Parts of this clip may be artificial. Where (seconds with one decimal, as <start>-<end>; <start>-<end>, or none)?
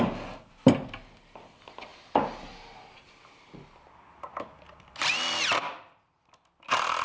none